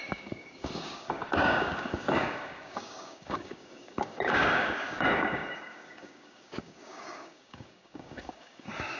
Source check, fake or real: fake